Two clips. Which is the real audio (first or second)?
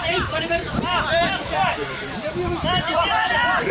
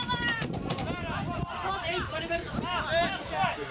second